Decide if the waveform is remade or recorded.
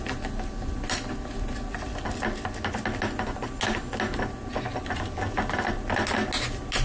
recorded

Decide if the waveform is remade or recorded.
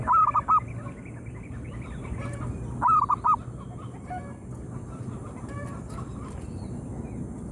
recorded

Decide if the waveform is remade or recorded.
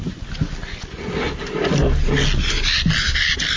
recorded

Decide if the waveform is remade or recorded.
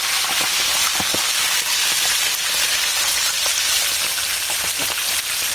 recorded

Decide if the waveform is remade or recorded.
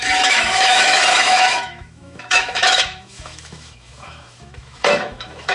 remade